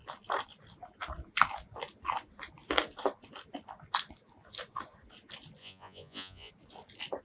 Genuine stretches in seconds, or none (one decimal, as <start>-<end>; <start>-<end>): 0.0-5.6; 6.5-7.2